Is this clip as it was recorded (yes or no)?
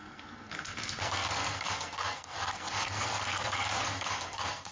no